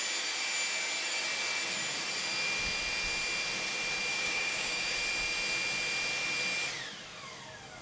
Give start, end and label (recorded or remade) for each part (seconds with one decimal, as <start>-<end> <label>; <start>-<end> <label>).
0.0-4.1 recorded; 4.1-5.0 remade; 5.0-7.8 recorded